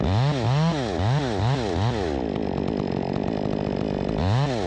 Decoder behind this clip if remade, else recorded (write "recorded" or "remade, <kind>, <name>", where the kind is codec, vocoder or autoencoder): recorded